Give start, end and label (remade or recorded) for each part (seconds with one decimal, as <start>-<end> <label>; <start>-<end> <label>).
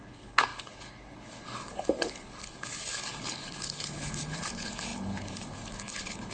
0.0-6.3 remade